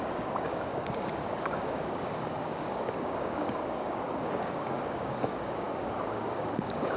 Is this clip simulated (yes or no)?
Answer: yes